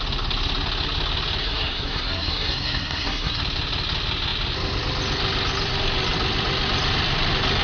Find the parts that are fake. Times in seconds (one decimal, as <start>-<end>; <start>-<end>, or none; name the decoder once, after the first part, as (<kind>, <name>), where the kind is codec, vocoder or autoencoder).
1.4-3.4 (codec, SNAC)